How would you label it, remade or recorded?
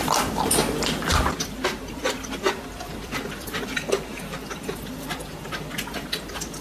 remade